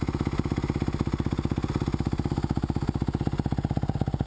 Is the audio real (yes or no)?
yes